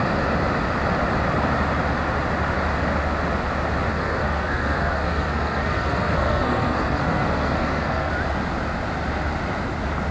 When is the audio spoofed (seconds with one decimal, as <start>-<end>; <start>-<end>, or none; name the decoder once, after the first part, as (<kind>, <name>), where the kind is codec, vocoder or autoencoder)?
3.9-8.1 (codec, SNAC)